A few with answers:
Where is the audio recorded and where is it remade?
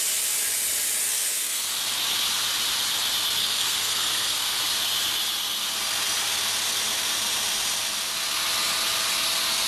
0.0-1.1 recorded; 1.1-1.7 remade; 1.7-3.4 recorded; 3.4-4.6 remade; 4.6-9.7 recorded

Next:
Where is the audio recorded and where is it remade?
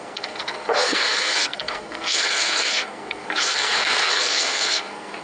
0.0-5.2 remade